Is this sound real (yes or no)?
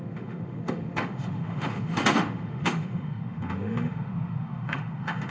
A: no